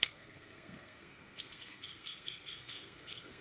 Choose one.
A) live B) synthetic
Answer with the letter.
B